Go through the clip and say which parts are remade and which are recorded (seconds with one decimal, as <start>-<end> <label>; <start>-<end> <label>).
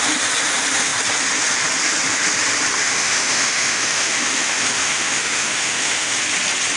0.0-2.8 recorded; 2.8-6.2 remade; 6.2-6.8 recorded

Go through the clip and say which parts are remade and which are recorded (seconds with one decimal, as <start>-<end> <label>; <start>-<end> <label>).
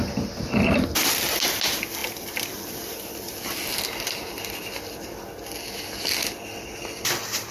0.0-7.5 recorded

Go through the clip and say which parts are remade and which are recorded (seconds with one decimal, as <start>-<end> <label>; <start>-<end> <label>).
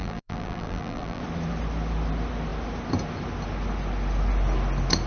0.0-1.2 remade; 1.2-5.1 recorded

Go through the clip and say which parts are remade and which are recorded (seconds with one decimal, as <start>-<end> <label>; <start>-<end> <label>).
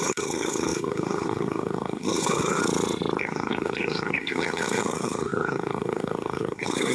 0.0-2.6 remade; 2.6-3.2 recorded; 3.2-6.9 remade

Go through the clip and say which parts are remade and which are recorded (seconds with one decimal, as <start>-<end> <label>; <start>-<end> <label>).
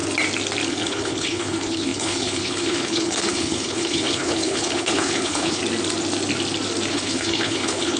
0.0-0.7 recorded; 0.7-5.6 remade; 5.6-6.9 recorded; 6.9-8.0 remade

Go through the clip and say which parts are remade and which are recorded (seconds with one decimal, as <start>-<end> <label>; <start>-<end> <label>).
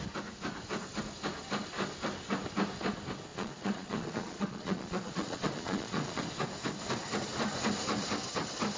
0.0-3.3 recorded; 3.3-6.2 remade; 6.2-8.8 recorded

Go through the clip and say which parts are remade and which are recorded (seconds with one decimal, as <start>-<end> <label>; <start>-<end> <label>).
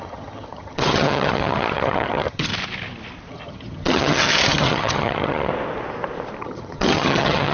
0.0-2.5 remade; 2.5-3.3 recorded; 3.3-5.5 remade; 5.5-6.4 recorded; 6.4-7.5 remade